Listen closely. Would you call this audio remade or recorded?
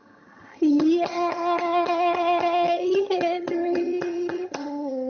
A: remade